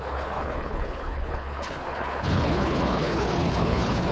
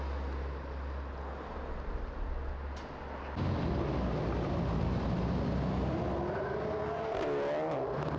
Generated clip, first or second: first